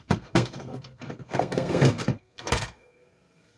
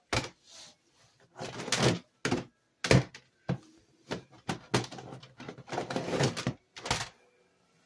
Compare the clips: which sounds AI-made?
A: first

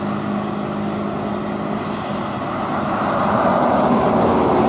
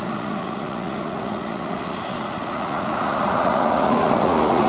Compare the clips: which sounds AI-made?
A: second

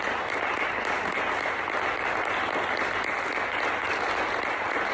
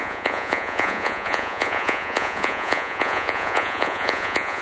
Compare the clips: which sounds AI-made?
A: second